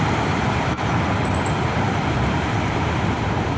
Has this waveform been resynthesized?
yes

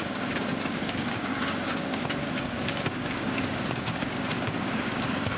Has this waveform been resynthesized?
yes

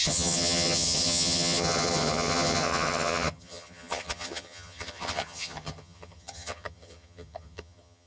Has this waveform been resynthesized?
yes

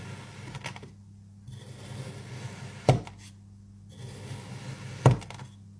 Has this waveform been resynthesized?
no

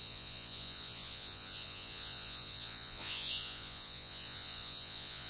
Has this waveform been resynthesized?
yes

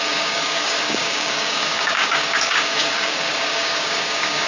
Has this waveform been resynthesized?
yes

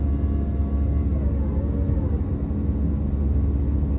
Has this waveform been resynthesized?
no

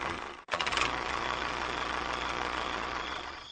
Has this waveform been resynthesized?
yes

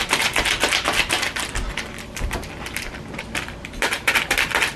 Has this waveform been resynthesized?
yes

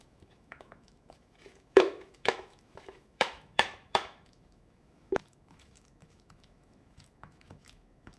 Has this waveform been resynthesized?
yes